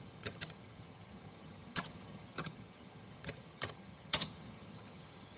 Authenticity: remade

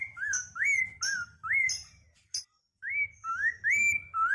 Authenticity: recorded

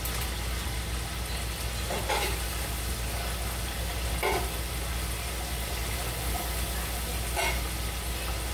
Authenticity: recorded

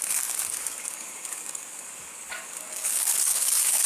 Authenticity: remade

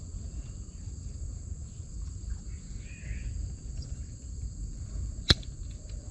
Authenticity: remade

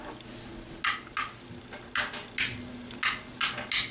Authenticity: recorded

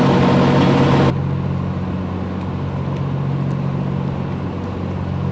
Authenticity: recorded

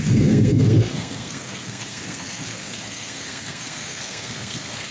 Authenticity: remade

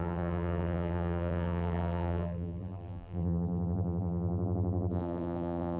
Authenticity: remade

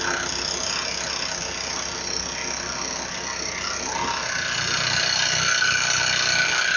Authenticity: recorded